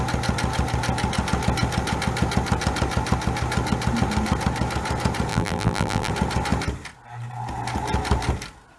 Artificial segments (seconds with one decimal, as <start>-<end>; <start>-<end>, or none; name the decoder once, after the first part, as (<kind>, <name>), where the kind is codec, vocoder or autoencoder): 5.3-6.1 (vocoder, BigVGAN v2)